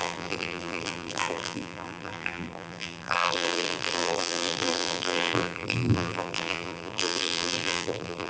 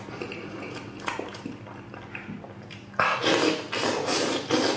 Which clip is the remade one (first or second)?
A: first